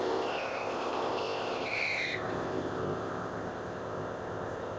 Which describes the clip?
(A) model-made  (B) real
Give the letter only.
A